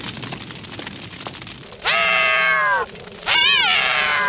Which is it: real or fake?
real